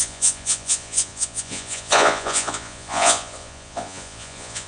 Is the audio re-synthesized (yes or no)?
yes